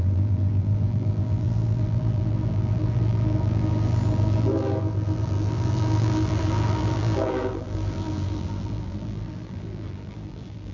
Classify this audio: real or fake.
fake